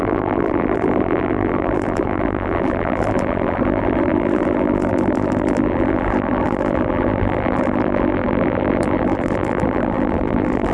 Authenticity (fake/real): fake